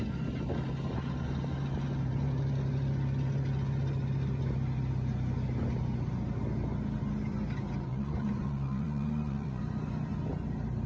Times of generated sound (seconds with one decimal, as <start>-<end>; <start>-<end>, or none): 7.9-9.6